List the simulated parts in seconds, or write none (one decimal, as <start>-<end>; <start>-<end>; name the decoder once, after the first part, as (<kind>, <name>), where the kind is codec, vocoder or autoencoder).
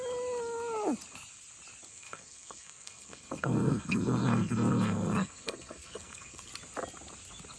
1.9-6.5 (codec, SNAC)